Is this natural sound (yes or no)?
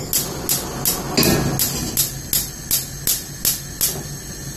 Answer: yes